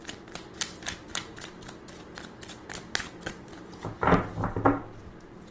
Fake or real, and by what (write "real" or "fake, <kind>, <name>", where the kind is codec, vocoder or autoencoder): real